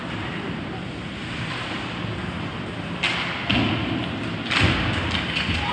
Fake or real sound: real